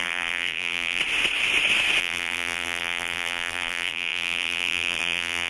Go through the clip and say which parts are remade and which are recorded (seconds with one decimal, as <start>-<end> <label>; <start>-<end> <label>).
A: 0.0-1.0 remade; 1.0-2.0 recorded; 2.0-5.5 remade